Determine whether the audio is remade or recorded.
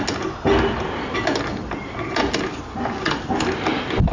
recorded